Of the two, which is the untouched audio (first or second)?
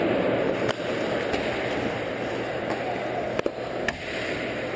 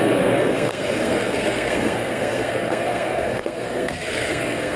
first